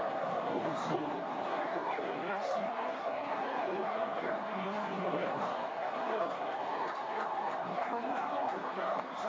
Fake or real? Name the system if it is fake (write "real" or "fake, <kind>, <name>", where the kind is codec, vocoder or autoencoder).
fake, codec, SNAC